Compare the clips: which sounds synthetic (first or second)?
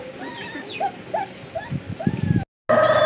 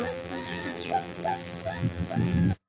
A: second